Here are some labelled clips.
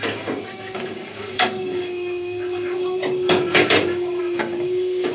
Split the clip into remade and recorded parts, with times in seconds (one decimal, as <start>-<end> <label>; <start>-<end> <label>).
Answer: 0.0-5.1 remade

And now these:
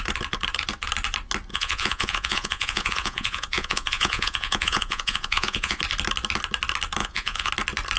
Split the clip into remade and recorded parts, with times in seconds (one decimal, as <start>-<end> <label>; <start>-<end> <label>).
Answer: 0.0-1.5 recorded; 1.5-5.8 remade; 5.8-7.0 recorded; 7.0-7.5 remade; 7.5-8.0 recorded

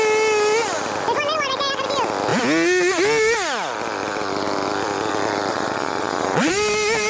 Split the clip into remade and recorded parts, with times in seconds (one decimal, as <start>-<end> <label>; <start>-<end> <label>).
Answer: 0.0-5.5 recorded; 5.5-6.5 remade; 6.5-7.1 recorded

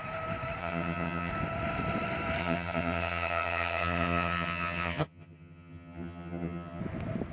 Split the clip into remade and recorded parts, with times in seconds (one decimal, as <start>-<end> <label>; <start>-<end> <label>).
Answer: 0.0-0.6 recorded; 0.6-1.3 remade; 1.3-2.4 recorded; 2.4-6.8 remade; 6.8-7.3 recorded